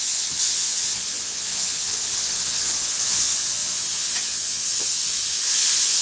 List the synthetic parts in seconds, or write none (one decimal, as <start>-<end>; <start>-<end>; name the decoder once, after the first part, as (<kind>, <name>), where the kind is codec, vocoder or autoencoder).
0.0-6.0 (vocoder, Vocos)